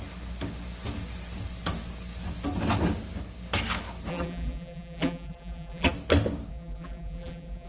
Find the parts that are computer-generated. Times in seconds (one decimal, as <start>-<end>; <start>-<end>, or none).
4.1-5.9; 6.5-7.7